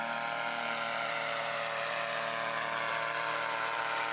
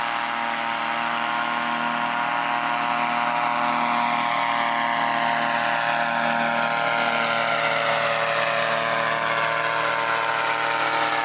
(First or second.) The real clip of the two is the second